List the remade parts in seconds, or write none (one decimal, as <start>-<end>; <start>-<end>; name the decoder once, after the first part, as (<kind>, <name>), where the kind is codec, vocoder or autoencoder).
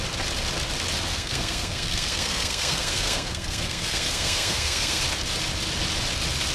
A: 1.1-5.0 (codec, SNAC)